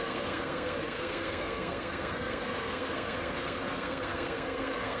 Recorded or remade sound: remade